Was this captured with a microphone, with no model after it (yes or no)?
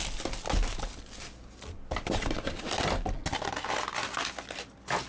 yes